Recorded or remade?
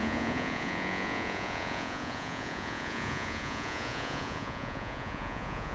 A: remade